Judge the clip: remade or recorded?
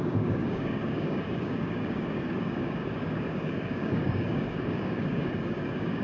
remade